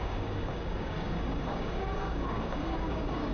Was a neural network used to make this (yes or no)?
yes